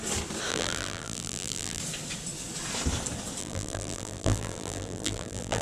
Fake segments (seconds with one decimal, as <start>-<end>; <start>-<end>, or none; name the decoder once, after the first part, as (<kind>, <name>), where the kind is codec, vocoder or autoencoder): 0.5-1.8 (vocoder, BigVGAN v2); 3.4-5.6